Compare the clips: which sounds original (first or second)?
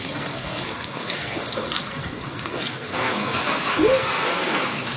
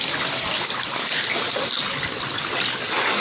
second